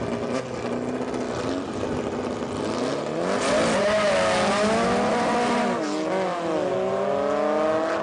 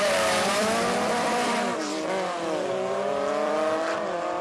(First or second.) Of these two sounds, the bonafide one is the first